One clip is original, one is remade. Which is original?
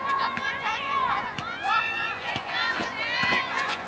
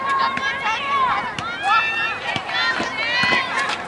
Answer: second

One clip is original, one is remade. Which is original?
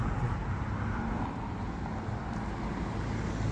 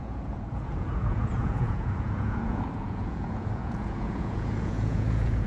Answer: first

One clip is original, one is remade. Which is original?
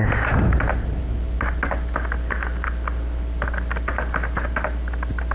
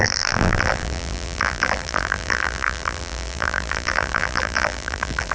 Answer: first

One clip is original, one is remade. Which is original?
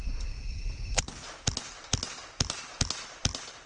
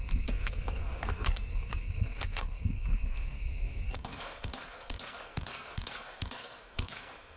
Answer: first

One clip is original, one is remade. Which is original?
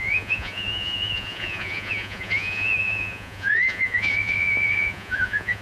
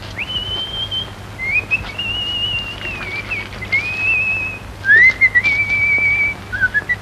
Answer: second